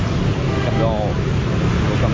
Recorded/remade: recorded